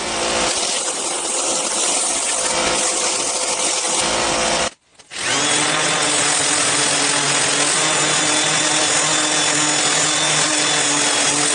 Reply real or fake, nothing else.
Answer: real